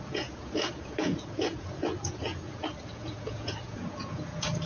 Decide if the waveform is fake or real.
fake